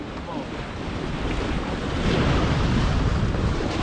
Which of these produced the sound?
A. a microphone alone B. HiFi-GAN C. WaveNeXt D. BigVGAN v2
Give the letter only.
A